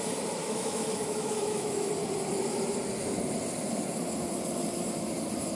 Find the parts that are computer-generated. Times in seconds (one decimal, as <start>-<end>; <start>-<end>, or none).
0.4-1.9